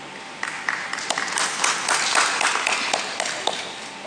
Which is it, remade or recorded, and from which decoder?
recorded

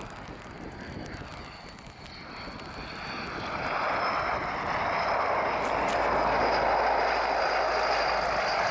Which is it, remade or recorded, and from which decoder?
recorded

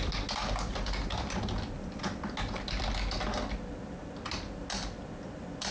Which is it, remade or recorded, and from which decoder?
recorded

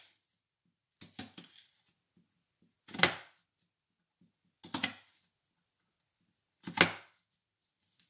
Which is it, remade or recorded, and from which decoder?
recorded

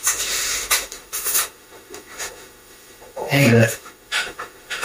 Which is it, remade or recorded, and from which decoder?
remade, autoencoder, DAC-VAE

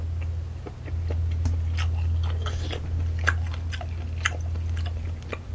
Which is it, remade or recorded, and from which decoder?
recorded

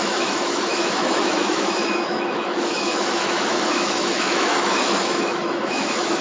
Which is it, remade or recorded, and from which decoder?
remade, autoencoder, DAC-VAE